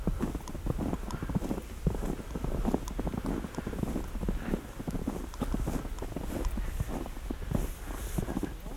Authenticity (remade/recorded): recorded